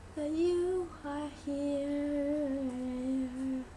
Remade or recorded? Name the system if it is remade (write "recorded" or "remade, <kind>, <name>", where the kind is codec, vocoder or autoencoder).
recorded